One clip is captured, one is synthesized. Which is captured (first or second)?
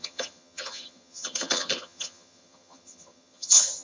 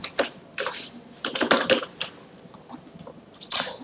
second